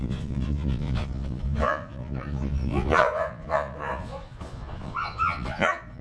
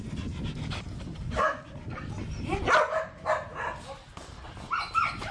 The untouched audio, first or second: second